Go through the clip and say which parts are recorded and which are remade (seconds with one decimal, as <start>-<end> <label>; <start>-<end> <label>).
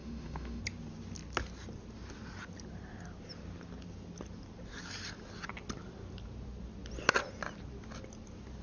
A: 0.0-0.6 remade; 0.6-8.6 recorded